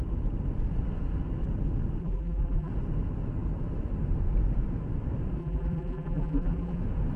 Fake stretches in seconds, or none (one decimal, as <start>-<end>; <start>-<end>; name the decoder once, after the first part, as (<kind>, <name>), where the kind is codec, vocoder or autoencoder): 2.0-2.7 (vocoder, BigVGAN v2); 5.4-6.8